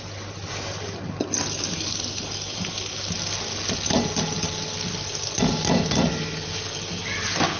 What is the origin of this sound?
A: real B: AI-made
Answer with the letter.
A